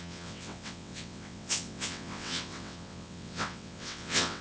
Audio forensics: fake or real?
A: fake